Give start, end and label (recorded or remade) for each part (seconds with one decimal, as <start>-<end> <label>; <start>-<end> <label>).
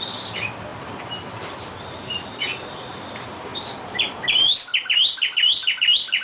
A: 0.0-4.7 remade; 4.7-6.2 recorded